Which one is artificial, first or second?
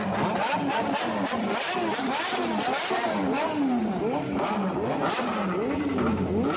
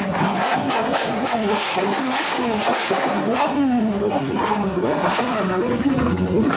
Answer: second